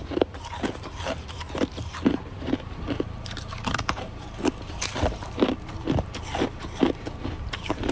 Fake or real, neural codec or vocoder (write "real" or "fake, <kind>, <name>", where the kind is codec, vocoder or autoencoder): fake, vocoder, BigVGAN v2